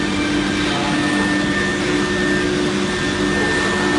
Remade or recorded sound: recorded